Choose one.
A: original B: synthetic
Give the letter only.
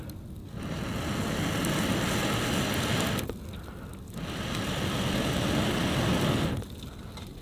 A